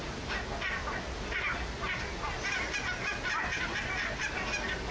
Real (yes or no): yes